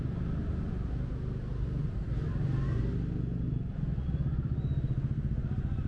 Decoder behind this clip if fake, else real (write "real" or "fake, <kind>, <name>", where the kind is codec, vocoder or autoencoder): real